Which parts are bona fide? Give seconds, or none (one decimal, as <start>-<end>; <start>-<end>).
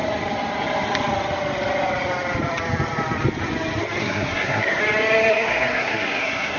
0.0-4.0; 4.8-5.3